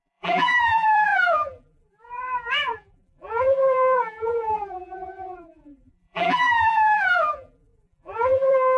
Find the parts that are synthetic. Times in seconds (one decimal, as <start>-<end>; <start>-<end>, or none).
0.0-8.8